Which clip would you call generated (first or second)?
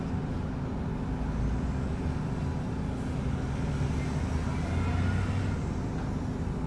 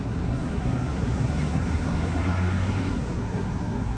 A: second